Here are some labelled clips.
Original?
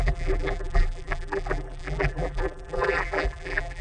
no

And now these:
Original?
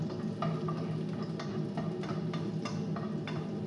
yes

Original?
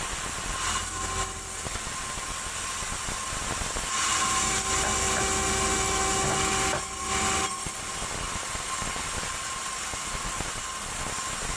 yes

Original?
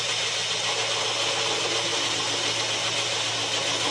yes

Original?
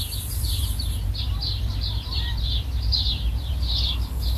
no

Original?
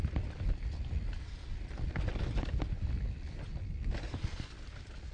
yes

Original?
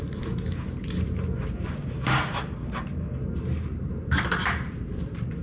no